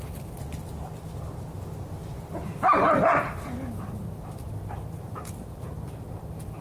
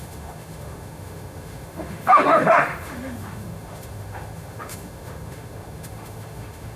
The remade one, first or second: second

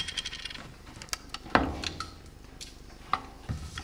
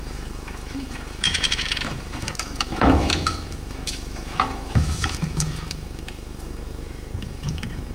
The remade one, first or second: second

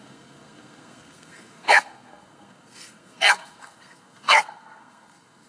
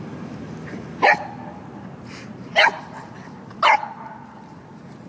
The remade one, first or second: first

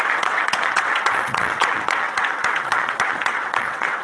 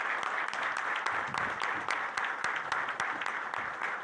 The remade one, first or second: first